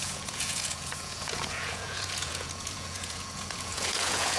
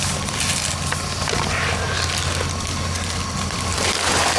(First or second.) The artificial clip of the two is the first